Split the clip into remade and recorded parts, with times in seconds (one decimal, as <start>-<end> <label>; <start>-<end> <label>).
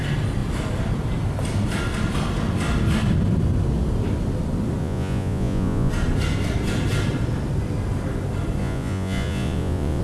0.0-4.8 recorded; 4.8-5.9 remade; 5.9-8.6 recorded; 8.6-10.0 remade